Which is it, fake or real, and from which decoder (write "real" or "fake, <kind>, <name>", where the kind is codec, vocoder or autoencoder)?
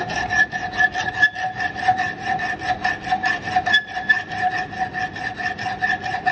real